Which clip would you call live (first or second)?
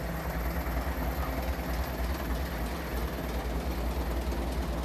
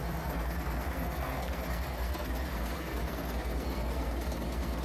first